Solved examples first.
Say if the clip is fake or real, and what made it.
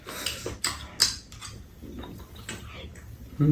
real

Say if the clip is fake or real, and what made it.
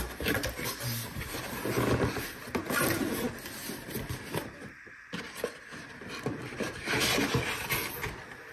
real